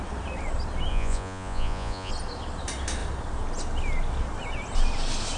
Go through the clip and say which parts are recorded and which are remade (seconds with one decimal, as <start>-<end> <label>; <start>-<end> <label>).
0.0-0.9 recorded; 0.9-2.1 remade; 2.1-5.4 recorded